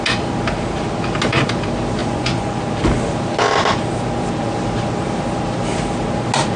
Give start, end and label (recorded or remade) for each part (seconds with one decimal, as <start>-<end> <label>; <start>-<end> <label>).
0.0-2.0 recorded; 2.0-2.6 remade; 2.6-6.6 recorded